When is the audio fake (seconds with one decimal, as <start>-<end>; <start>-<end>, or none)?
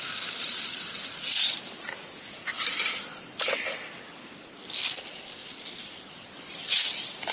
none